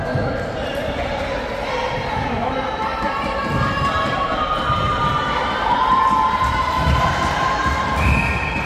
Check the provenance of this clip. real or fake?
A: fake